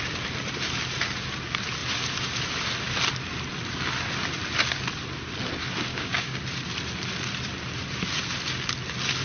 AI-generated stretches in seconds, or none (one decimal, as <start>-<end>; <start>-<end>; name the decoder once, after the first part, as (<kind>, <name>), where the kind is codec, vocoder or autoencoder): 5.9-6.4 (codec, DAC)